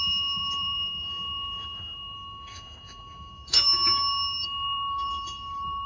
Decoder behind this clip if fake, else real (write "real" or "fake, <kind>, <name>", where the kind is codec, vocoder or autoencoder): fake, autoencoder, DAC-VAE